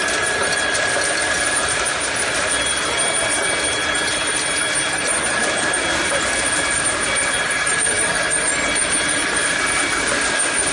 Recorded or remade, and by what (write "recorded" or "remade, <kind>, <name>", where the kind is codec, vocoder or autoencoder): recorded